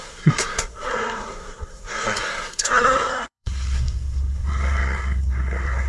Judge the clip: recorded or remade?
remade